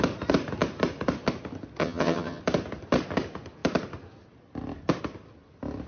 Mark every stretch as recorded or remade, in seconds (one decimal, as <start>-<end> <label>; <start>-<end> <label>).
0.0-1.8 recorded; 1.8-2.4 remade; 2.4-5.9 recorded